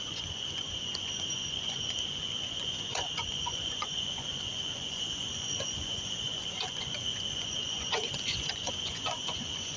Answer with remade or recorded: remade